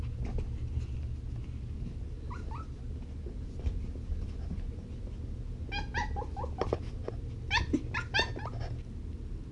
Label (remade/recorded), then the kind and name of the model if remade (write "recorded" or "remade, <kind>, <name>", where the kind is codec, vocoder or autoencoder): recorded